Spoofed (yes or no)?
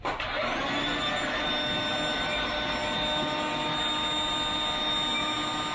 no